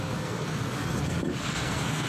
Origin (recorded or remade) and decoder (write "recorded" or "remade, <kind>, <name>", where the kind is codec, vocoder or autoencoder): remade, codec, SNAC